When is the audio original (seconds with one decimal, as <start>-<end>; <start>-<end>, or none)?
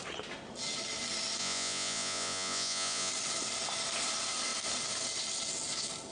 0.0-1.4; 3.1-6.1